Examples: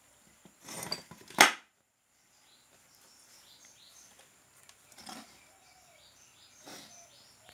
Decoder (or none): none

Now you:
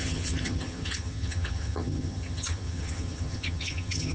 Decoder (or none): vocoder, HiFi-GAN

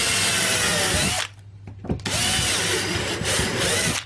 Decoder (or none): vocoder, BigVGAN v2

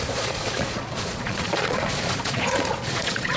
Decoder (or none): vocoder, Vocos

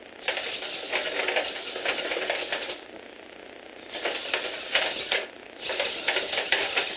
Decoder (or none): none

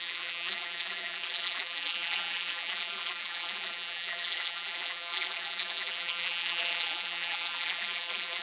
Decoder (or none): vocoder, BigVGAN v2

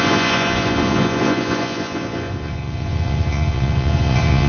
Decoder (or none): vocoder, Vocos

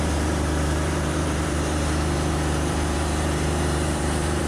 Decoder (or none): vocoder, BigVGAN v2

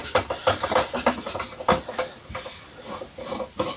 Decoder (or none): none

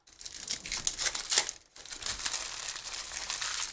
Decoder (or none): none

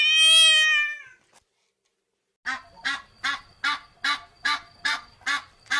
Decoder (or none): none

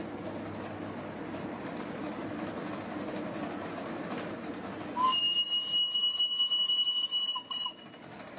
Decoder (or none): none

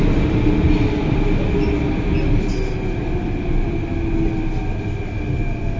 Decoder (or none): none